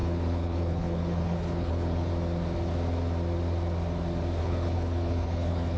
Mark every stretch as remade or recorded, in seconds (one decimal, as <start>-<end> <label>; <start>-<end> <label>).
0.0-2.1 remade; 2.1-4.4 recorded; 4.4-5.8 remade